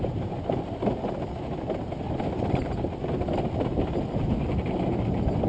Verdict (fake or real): real